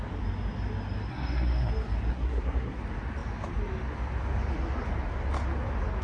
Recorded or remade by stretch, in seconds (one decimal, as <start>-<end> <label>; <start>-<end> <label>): 0.0-1.1 recorded; 1.1-1.7 remade; 1.7-2.1 recorded; 2.1-2.8 remade; 2.8-6.0 recorded